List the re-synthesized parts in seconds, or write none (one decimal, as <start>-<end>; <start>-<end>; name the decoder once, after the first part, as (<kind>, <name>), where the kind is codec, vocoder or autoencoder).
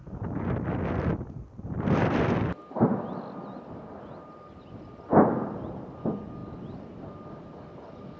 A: none